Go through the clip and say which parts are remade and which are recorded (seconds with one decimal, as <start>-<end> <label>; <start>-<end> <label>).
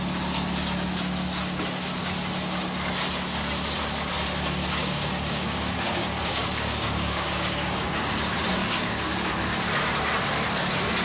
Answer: 0.0-4.8 recorded; 4.8-7.8 remade; 7.8-8.6 recorded; 8.6-9.3 remade; 9.3-11.0 recorded